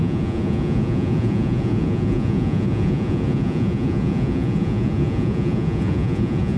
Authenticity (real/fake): fake